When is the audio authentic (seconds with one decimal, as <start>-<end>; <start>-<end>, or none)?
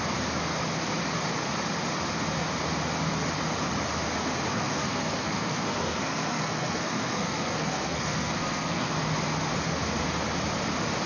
0.0-4.5; 8.9-11.1